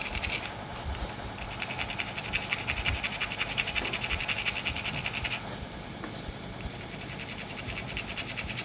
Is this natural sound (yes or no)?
yes